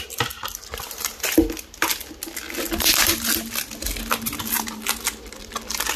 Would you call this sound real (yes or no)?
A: yes